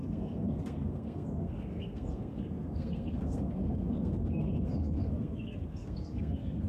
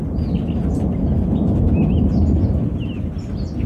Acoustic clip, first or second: second